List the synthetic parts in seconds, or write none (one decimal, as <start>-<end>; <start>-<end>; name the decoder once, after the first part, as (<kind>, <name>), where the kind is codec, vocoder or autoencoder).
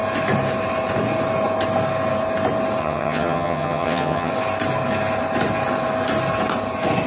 2.8-4.3 (vocoder, HiFi-GAN)